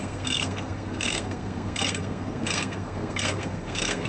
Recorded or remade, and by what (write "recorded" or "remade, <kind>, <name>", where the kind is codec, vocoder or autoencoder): remade, codec, SNAC